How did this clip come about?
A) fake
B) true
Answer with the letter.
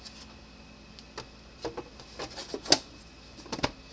B